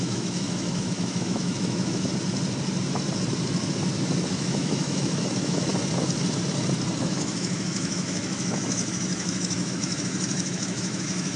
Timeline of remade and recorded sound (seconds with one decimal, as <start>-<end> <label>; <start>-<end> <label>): 0.0-2.1 remade; 2.1-4.3 recorded; 4.3-5.7 remade; 5.7-7.0 recorded; 7.0-11.4 remade